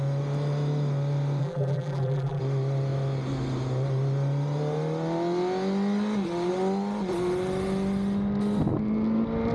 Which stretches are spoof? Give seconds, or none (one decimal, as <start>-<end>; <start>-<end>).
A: 1.4-2.4